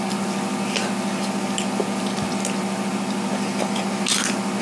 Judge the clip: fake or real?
real